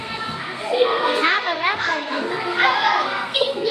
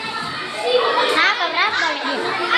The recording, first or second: second